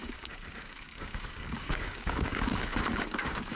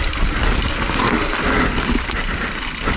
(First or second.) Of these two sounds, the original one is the second